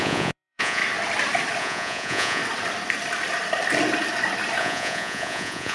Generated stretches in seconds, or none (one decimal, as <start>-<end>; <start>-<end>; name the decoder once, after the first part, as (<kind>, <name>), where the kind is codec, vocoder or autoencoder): 0.0-0.8 (vocoder, Vocos); 1.6-2.4; 4.6-5.7